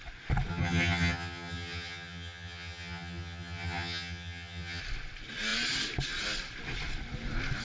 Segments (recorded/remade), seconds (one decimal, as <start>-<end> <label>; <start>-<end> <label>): 0.0-0.5 recorded; 0.5-4.8 remade; 4.8-7.6 recorded